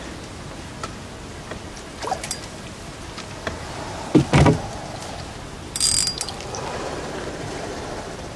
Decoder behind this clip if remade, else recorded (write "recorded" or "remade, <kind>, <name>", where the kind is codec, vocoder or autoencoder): recorded